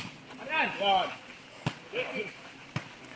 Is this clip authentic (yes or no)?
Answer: yes